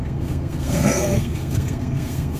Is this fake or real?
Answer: fake